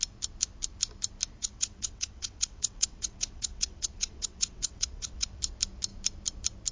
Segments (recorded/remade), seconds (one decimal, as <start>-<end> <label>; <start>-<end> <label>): 0.0-1.4 recorded; 1.4-5.4 remade; 5.4-6.7 recorded